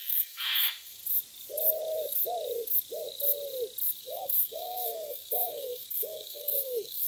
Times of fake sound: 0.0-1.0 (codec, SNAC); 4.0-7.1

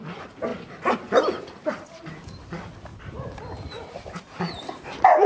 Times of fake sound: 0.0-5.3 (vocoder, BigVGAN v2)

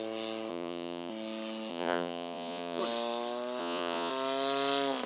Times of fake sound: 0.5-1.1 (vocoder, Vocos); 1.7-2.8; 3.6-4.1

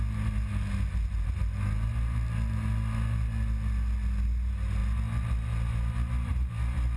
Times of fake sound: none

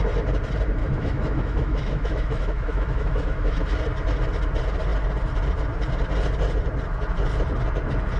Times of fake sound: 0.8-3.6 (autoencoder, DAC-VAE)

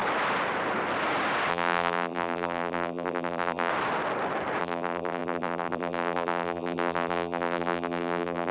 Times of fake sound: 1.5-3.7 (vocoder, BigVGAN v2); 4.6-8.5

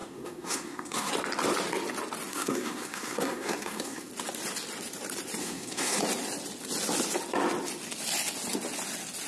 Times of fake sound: 0.0-1.1 (codec, SNAC); 2.3-4.1; 5.4-6.0